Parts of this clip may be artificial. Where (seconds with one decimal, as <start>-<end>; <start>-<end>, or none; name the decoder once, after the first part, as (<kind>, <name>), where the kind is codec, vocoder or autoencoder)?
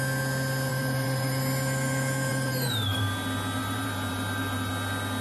0.7-1.4 (vocoder, BigVGAN v2); 2.3-3.0; 3.6-4.7